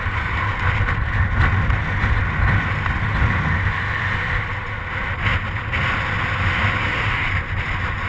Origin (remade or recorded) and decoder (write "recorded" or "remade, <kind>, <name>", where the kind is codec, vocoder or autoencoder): recorded